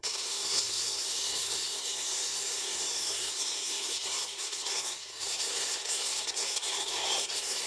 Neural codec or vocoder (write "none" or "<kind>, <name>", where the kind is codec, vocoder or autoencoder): codec, SNAC